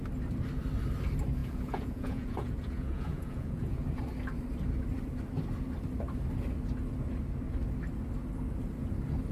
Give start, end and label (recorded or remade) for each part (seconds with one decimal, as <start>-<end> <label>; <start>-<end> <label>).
0.0-1.4 recorded; 1.4-4.0 remade; 4.0-9.3 recorded